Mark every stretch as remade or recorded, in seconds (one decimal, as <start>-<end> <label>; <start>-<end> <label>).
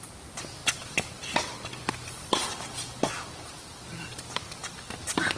0.0-2.4 recorded; 2.4-3.1 remade; 3.1-4.6 recorded; 4.6-5.4 remade